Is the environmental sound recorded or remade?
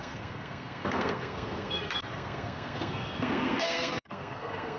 remade